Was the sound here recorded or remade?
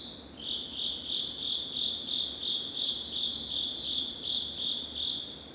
recorded